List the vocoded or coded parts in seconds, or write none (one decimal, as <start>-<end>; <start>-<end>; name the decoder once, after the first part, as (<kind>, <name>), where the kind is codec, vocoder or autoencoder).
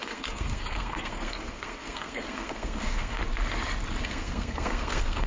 0.0-3.2 (codec, SNAC); 4.0-5.3